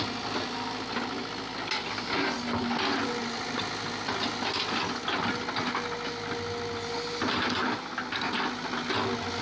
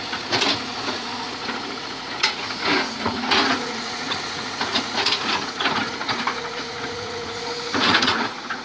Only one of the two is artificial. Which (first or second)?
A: second